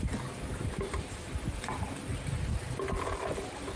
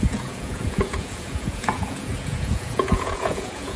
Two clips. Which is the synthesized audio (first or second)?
second